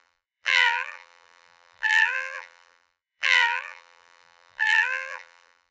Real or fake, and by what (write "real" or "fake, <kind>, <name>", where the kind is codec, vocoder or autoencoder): fake, vocoder, BigVGAN v2